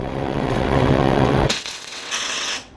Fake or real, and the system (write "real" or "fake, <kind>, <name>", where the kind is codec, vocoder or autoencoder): fake, vocoder, WaveNeXt